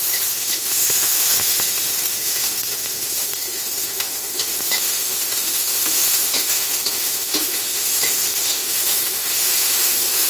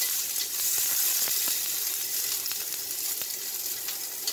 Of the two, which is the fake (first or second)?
first